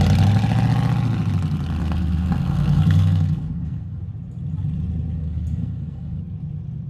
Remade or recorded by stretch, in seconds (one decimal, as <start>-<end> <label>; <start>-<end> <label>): 0.0-1.8 recorded; 1.8-4.0 remade; 4.0-5.2 recorded; 5.2-6.2 remade; 6.2-6.9 recorded